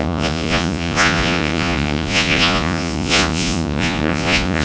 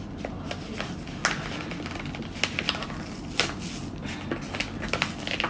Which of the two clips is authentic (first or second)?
second